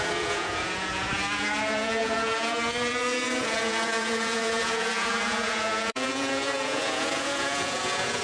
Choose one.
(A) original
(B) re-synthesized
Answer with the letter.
B